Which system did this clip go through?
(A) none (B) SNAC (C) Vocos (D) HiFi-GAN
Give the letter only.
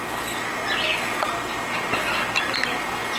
A